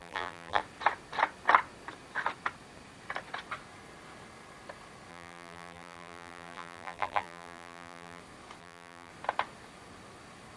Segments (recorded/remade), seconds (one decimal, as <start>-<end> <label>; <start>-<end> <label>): 0.0-0.6 remade; 0.6-5.1 recorded; 5.1-8.2 remade; 8.2-8.6 recorded; 8.6-9.1 remade; 9.1-10.6 recorded